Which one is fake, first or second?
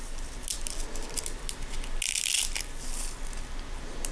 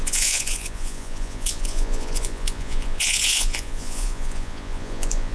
second